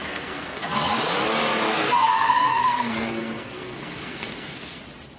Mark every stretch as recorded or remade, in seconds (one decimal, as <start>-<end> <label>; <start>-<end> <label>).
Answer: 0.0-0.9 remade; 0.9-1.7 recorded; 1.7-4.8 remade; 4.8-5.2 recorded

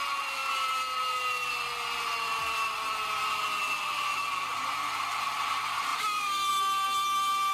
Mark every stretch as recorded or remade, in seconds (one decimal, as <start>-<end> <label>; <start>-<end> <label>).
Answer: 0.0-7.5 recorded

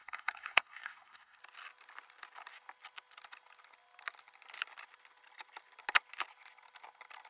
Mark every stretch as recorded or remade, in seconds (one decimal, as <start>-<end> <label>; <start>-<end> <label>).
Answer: 0.0-1.4 remade; 1.4-7.3 recorded

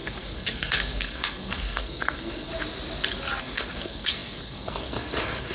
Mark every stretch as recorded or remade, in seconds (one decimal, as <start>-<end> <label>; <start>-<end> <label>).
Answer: 0.0-2.5 remade; 2.5-3.4 recorded; 3.4-5.5 remade

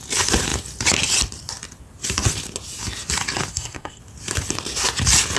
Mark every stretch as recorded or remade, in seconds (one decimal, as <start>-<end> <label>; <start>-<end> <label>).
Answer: 0.0-3.5 recorded; 3.5-4.0 remade; 4.0-5.4 recorded